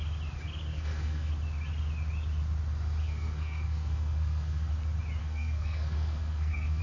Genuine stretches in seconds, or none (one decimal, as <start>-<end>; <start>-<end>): 0.0-0.7; 1.3-3.0; 4.7-5.2